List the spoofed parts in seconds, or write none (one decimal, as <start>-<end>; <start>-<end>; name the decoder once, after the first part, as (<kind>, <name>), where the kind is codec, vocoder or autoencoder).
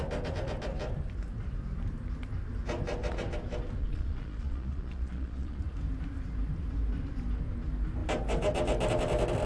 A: 3.8-5.6 (vocoder, Vocos)